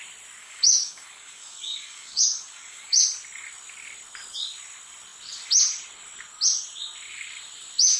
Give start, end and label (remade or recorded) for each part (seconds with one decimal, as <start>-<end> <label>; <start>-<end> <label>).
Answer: 0.0-0.4 recorded; 0.4-3.0 remade; 3.0-8.0 recorded